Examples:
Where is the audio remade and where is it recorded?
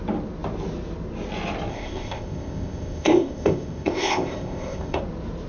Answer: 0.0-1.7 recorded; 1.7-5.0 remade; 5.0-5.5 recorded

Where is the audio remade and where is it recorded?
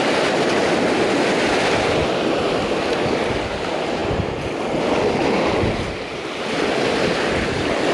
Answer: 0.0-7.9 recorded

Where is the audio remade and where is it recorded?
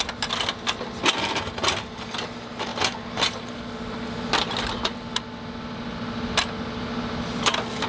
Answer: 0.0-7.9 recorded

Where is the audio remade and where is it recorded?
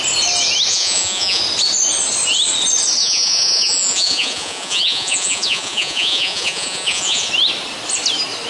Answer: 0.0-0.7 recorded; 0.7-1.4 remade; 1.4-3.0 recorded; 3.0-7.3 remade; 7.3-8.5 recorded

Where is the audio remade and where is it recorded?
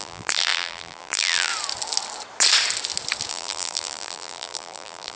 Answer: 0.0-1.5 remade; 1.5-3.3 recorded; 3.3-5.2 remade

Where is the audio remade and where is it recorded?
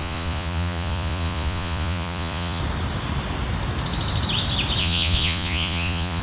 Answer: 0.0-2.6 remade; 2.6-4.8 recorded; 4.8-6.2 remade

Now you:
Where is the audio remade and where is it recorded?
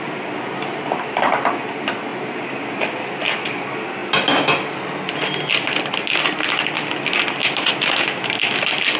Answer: 0.0-9.0 recorded